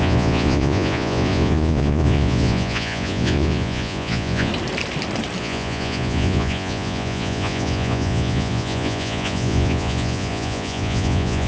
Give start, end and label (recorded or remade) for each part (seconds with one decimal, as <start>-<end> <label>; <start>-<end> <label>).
0.0-4.5 remade; 4.5-5.4 recorded; 5.4-11.5 remade